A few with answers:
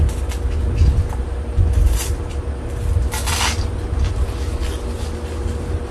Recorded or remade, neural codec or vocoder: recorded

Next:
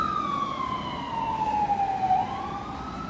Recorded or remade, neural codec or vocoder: recorded